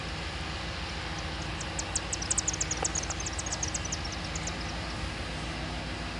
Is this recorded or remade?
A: recorded